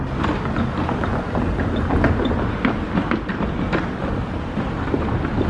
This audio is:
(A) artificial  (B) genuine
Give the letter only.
B